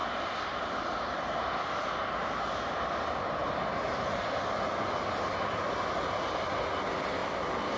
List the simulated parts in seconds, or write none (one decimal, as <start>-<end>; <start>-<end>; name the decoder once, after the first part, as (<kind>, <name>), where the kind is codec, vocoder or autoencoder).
none